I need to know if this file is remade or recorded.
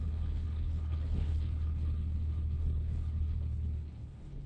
remade